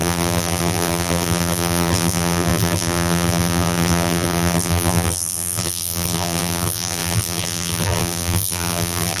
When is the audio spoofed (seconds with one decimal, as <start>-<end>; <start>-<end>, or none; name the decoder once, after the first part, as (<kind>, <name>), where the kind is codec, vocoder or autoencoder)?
0.0-9.2 (vocoder, BigVGAN v2)